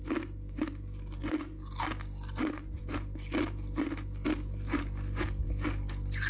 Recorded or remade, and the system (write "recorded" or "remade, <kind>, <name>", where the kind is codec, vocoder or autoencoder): recorded